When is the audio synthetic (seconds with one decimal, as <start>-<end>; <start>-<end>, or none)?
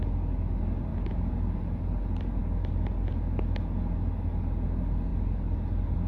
none